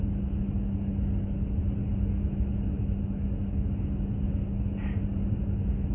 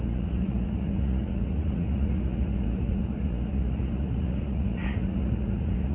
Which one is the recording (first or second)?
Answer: first